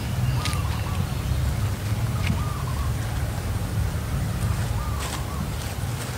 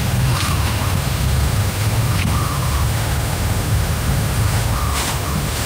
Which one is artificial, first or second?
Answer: second